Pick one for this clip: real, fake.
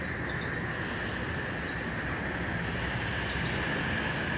real